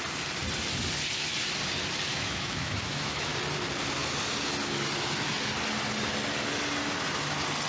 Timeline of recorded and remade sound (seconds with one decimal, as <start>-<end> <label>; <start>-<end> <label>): 0.0-2.1 recorded; 2.1-3.3 remade; 3.3-7.7 recorded